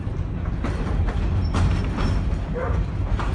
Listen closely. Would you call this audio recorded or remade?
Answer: recorded